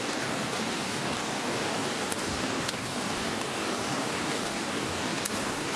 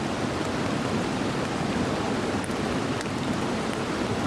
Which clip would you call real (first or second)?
second